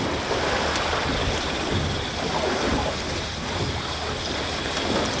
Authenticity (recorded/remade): recorded